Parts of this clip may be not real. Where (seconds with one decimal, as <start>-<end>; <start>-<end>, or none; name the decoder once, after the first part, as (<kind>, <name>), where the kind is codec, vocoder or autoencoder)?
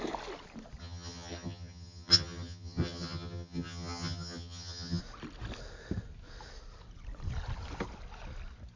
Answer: 0.8-5.0 (vocoder, HiFi-GAN)